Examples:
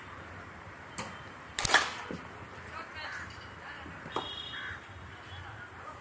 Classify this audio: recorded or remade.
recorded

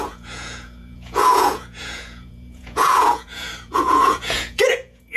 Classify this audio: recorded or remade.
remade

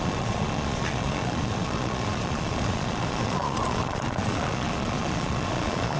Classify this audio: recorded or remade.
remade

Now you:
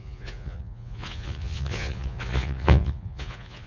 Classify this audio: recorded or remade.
remade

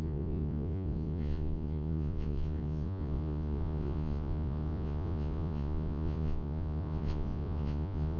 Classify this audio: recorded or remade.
remade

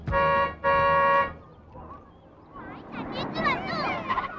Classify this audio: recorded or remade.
recorded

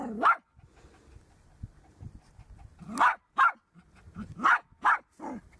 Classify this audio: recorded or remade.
recorded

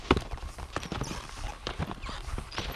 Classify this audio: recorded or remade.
recorded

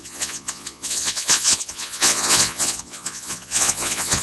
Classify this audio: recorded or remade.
remade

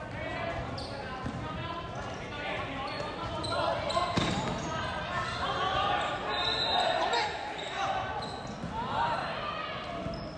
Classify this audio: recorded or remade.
recorded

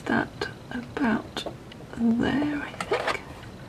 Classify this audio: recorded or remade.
recorded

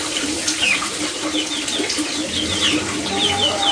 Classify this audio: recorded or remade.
recorded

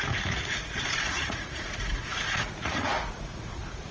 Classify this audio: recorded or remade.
remade